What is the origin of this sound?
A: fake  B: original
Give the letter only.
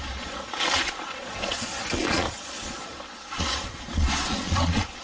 A